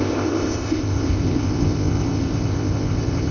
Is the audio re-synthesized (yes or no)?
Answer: yes